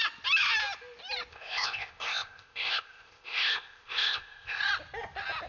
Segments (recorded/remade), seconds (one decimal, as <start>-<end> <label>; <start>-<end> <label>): 0.0-1.3 recorded; 1.3-4.6 remade; 4.6-5.5 recorded